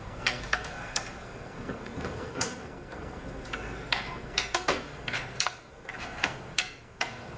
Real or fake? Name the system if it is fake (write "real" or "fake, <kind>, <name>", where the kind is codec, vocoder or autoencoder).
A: fake, codec, SNAC